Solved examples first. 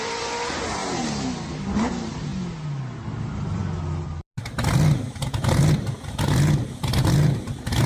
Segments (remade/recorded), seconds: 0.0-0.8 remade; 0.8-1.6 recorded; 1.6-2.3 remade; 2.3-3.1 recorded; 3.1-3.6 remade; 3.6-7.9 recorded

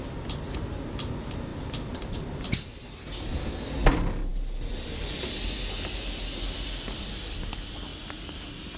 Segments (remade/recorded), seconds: 0.0-1.5 recorded; 1.5-2.5 remade; 2.5-8.8 recorded

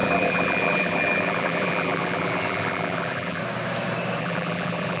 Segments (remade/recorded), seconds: 0.0-3.4 remade; 3.4-4.2 recorded; 4.2-5.0 remade

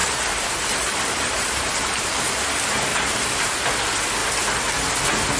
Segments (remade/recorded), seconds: 0.0-1.7 remade; 1.7-2.9 recorded; 2.9-3.5 remade; 3.5-5.4 recorded